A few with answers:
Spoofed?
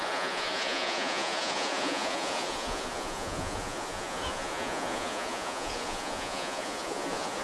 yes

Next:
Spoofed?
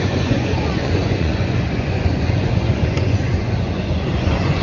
yes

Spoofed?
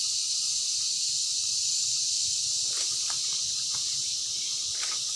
no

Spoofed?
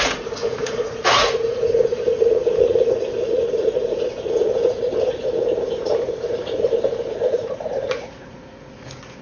yes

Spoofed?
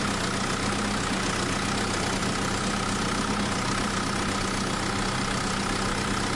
no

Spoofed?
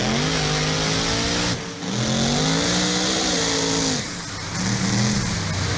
no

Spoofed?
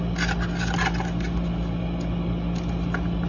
no